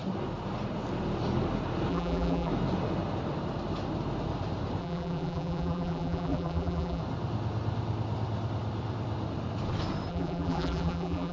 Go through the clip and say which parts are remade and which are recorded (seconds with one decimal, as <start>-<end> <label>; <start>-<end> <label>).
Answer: 0.0-1.9 recorded; 1.9-2.5 remade; 2.5-4.8 recorded; 4.8-7.0 remade; 7.0-10.1 recorded; 10.1-11.3 remade